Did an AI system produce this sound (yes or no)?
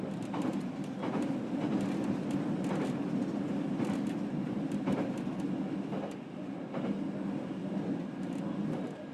no